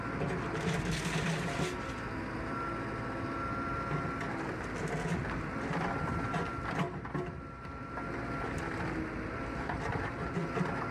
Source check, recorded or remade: recorded